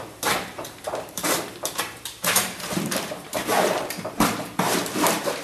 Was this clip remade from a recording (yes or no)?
yes